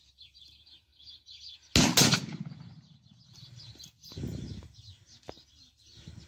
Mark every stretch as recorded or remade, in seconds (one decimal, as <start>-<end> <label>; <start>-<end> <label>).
0.0-6.3 recorded